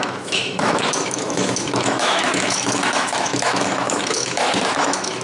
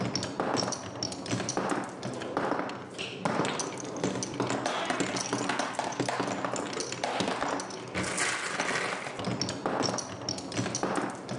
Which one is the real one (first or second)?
second